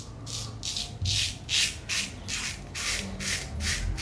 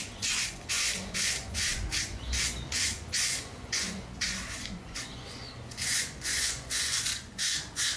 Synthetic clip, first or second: second